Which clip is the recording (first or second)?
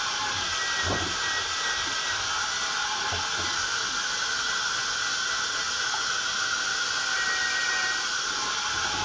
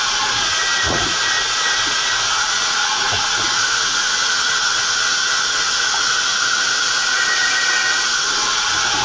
first